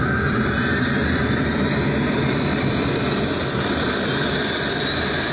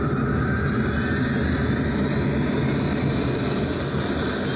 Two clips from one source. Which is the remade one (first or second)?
first